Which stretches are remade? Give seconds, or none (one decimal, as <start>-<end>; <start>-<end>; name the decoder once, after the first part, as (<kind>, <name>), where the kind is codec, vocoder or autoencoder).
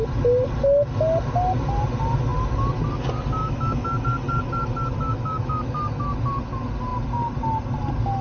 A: 3.4-4.0 (autoencoder, DAC-VAE); 5.1-6.0